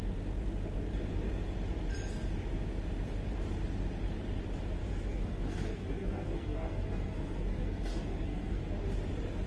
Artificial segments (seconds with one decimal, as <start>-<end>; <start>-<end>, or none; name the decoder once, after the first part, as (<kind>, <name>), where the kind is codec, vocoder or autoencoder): 4.8-8.6 (codec, SNAC)